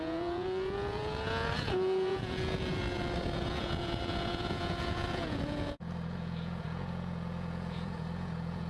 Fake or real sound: fake